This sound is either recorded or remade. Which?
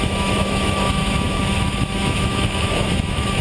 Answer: remade